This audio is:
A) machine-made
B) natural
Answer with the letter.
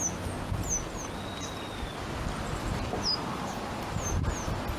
B